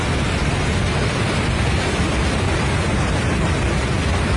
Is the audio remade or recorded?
recorded